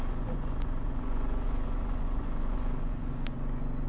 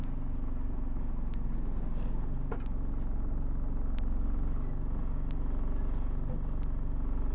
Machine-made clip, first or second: first